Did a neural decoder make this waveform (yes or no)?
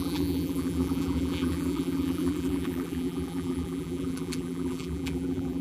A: yes